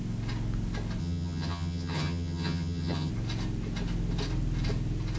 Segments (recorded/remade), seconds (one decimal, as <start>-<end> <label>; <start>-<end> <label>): 0.0-1.0 recorded; 1.0-3.1 remade; 3.1-5.2 recorded